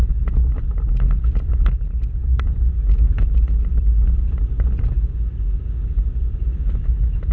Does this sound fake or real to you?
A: real